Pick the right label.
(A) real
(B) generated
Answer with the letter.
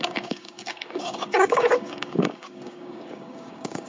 B